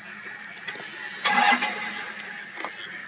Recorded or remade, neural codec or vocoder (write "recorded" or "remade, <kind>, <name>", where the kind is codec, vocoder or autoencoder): recorded